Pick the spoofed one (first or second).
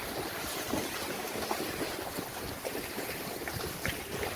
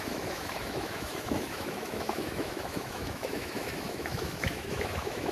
second